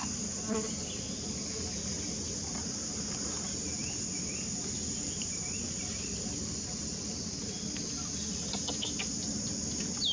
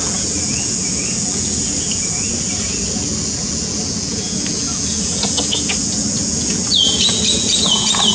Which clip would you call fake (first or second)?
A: second